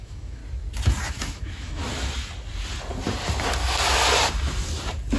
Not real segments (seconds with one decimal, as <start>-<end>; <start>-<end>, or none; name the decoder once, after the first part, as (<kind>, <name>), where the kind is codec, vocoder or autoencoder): 0.0-0.4 (autoencoder, DAC-VAE); 1.1-1.8